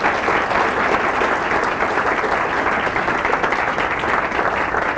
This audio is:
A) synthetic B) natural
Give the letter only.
B